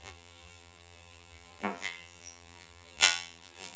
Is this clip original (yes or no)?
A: no